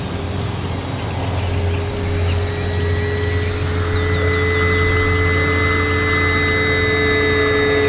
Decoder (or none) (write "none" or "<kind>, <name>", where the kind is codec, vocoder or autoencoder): none